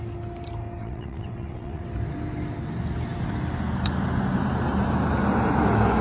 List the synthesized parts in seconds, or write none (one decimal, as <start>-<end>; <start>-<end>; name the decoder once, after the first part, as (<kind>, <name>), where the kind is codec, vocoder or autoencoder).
0.8-1.8 (vocoder, WaveNeXt)

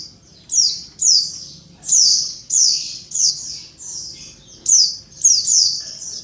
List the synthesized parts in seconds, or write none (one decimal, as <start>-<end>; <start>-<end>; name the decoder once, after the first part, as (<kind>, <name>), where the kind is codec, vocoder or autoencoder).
2.1-3.3 (vocoder, WaveNeXt); 5.5-6.2

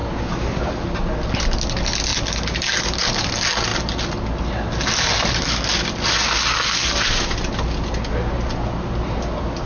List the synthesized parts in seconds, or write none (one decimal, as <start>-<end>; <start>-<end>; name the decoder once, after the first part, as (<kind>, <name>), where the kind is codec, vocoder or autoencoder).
none

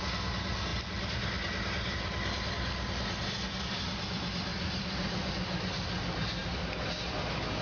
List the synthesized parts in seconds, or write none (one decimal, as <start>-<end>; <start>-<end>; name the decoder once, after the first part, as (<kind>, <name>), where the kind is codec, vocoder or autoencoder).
none

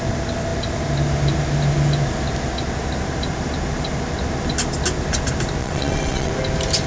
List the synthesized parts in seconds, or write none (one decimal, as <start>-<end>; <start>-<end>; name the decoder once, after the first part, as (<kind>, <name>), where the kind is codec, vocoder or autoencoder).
5.6-6.3 (vocoder, WaveNeXt)

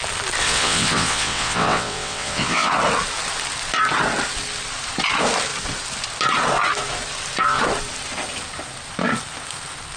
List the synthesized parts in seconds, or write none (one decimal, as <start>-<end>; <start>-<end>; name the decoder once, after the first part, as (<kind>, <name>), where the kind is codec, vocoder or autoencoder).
0.4-2.7 (vocoder, WaveNeXt)